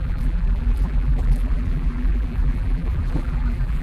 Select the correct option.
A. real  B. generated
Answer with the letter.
B